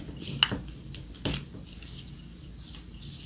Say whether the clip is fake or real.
real